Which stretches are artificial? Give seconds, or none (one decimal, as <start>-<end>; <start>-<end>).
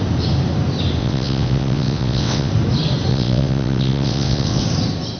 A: 1.0-2.5; 3.1-4.6